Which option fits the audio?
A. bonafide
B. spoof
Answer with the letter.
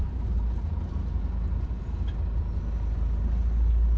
A